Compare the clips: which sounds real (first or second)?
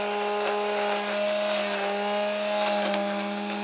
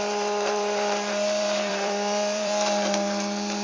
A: first